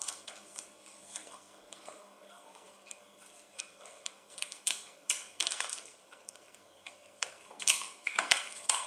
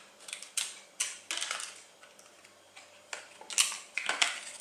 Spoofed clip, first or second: first